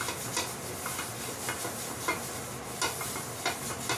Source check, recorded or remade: recorded